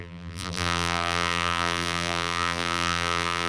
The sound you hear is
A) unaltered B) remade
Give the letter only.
B